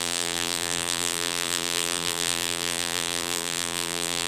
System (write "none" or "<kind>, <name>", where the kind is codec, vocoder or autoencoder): vocoder, BigVGAN v2